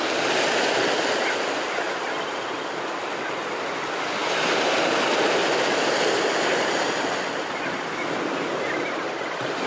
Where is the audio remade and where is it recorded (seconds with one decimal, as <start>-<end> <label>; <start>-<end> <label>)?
0.0-9.7 recorded